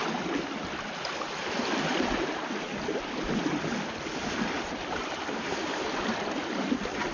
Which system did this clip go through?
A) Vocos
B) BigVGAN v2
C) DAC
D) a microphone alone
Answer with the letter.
D